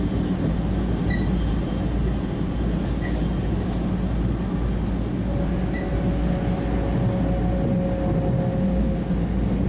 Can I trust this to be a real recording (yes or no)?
yes